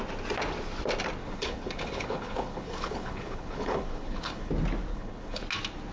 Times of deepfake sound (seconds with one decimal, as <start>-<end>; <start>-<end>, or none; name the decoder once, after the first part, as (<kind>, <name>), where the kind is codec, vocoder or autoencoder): 1.2-4.5 (codec, HILCodec); 4.9-5.4